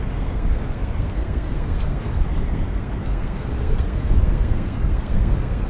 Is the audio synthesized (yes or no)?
yes